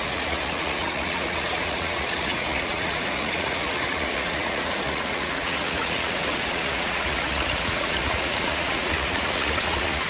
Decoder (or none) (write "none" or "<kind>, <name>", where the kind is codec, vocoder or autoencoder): vocoder, Vocos